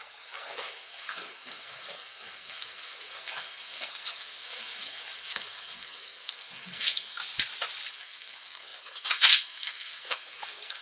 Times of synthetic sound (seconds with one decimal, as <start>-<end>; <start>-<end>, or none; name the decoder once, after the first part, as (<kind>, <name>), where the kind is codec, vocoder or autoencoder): 0.0-7.2 (codec, SNAC); 7.9-10.8